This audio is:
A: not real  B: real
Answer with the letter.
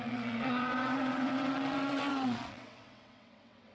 A